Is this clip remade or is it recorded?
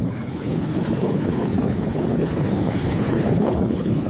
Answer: remade